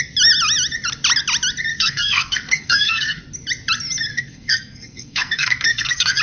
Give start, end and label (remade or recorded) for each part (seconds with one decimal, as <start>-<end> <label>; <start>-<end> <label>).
0.0-1.7 recorded; 1.7-3.2 remade; 3.2-4.1 recorded; 4.1-6.2 remade